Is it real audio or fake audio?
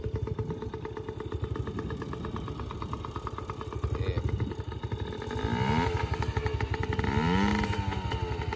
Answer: real